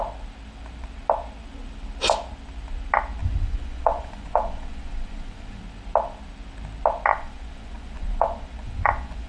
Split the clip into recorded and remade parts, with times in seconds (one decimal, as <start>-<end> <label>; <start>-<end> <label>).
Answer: 0.0-3.2 recorded; 3.2-5.6 remade; 5.6-7.1 recorded; 7.1-9.3 remade